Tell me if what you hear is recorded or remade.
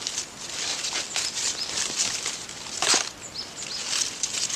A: recorded